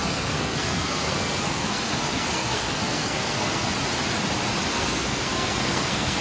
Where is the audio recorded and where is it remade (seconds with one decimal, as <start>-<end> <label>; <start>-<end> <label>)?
0.0-3.7 remade; 3.7-4.7 recorded; 4.7-6.2 remade